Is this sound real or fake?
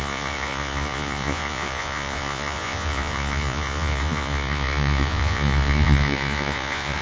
fake